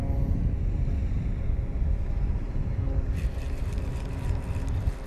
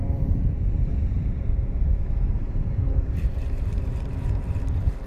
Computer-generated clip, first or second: second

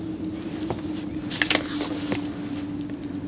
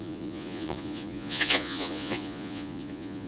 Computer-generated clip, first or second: second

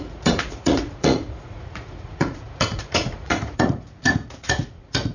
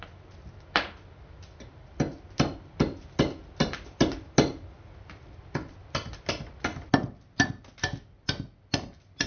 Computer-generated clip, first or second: first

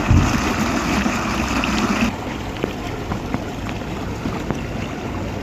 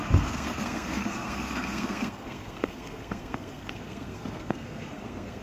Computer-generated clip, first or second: second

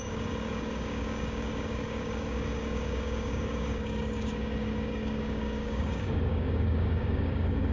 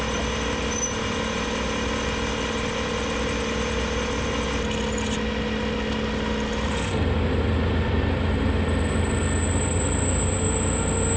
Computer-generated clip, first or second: first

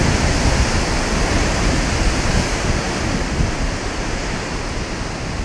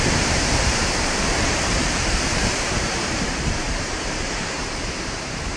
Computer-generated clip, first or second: second